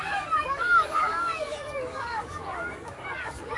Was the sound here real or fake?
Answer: fake